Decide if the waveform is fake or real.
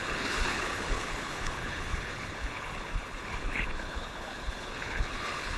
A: fake